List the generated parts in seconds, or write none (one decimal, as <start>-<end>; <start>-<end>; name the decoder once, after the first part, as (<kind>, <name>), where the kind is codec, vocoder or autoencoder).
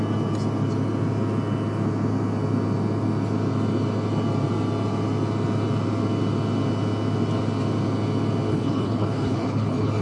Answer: 8.5-10.0 (codec, HILCodec)